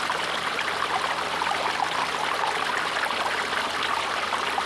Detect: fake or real real